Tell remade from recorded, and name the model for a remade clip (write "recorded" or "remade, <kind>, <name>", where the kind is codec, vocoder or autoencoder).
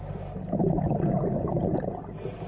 recorded